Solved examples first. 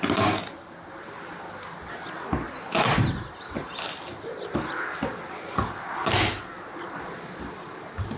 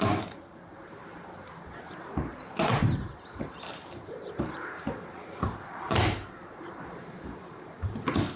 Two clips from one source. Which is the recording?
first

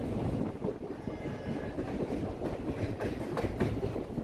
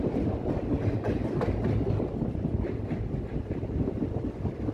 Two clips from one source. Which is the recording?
second